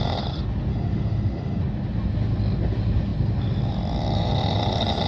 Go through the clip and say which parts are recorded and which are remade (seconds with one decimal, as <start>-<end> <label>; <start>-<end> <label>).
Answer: 0.0-0.7 recorded; 0.7-1.6 remade; 1.6-5.1 recorded